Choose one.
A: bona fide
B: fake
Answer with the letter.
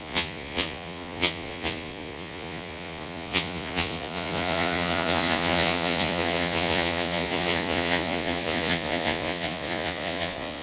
B